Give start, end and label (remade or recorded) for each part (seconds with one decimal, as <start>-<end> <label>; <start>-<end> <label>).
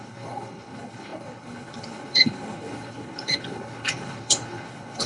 0.0-5.1 remade